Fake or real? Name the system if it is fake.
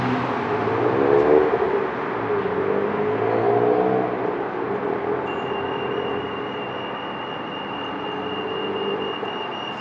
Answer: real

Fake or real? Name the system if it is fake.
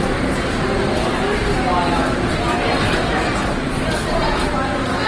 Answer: real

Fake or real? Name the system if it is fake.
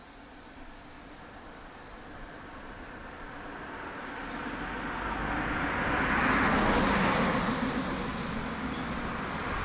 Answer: real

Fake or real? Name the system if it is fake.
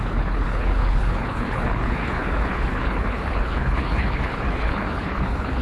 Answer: fake, codec, HILCodec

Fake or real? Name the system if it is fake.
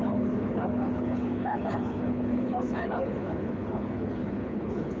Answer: fake, codec, HILCodec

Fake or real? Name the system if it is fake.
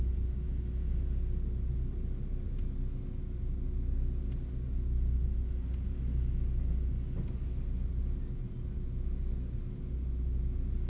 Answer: real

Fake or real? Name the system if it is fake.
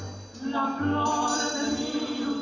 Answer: real